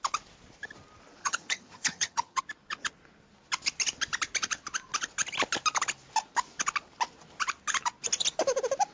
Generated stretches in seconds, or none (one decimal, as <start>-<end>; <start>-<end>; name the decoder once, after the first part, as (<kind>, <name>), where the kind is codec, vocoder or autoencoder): 1.2-2.4 (vocoder, HiFi-GAN)